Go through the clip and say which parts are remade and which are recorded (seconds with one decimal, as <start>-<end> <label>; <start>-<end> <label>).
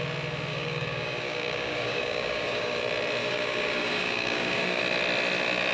0.0-0.5 recorded; 0.5-2.8 remade; 2.8-3.2 recorded; 3.2-4.8 remade; 4.8-5.7 recorded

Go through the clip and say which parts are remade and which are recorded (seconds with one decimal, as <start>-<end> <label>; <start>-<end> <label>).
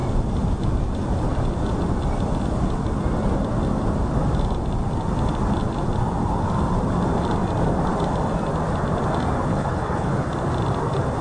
0.0-9.5 recorded; 9.5-10.3 remade; 10.3-11.2 recorded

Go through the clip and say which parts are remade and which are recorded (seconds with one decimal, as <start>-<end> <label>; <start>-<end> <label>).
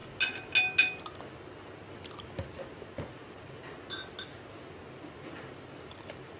0.0-4.3 recorded; 4.3-4.8 remade; 4.8-6.4 recorded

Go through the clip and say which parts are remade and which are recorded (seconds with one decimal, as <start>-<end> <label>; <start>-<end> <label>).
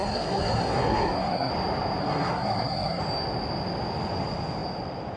0.0-1.5 remade; 1.5-2.0 recorded; 2.0-3.0 remade; 3.0-5.2 recorded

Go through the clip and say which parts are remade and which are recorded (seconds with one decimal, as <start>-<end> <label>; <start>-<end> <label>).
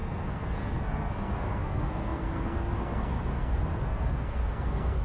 0.0-5.0 remade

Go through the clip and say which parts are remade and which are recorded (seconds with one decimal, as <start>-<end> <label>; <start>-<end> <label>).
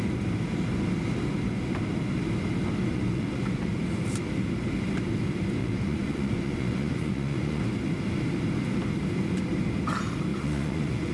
0.0-2.9 recorded; 2.9-3.7 remade; 3.7-5.6 recorded; 5.6-7.6 remade; 7.6-10.3 recorded; 10.3-11.1 remade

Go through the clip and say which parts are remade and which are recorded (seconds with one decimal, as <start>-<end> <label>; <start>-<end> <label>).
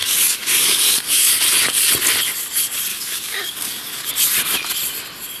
0.0-1.3 remade; 1.3-2.9 recorded; 2.9-4.1 remade; 4.1-5.4 recorded